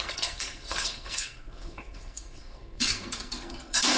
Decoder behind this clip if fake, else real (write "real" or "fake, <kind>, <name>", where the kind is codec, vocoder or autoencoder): fake, codec, SNAC